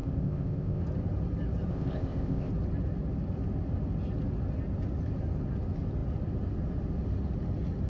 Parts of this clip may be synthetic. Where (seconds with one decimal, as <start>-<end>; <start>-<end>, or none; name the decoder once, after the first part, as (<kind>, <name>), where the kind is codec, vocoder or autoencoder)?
0.0-0.8 (codec, ZipCodec); 1.7-2.5